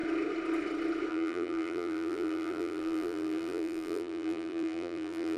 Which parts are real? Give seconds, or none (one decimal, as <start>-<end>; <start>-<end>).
0.0-1.1